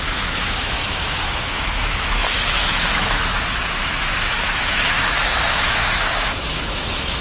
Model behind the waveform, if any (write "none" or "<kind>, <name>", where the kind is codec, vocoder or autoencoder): autoencoder, DAC-VAE